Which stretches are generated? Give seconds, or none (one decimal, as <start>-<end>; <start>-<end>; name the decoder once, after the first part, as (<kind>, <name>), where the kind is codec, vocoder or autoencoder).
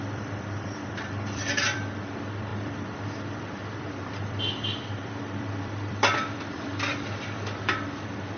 0.0-8.4 (vocoder, BigVGAN v2)